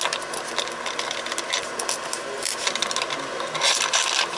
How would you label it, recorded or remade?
recorded